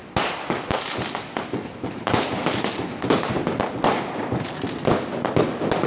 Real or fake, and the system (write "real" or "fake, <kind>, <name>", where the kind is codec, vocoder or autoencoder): real